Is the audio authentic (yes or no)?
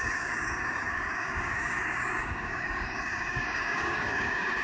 no